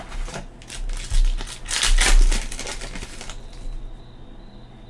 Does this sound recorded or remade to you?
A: recorded